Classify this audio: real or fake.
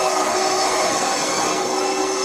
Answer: fake